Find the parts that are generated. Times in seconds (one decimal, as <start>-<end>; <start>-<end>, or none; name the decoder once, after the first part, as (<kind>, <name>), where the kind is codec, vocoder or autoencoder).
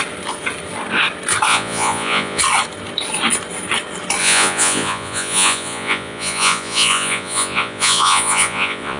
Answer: 1.5-2.4 (vocoder, Vocos); 4.2-9.0